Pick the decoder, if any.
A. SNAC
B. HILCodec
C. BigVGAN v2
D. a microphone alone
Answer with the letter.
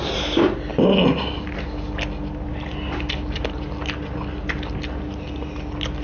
D